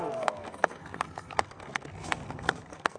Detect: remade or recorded remade